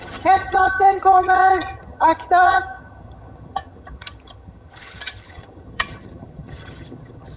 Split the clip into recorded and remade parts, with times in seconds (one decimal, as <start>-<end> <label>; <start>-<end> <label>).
0.0-7.4 remade